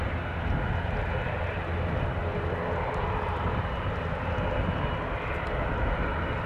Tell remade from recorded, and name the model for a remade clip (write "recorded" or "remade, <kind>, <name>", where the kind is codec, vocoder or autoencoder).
recorded